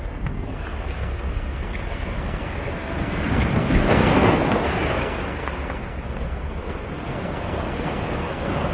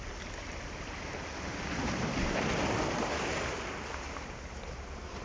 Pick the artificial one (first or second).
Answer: first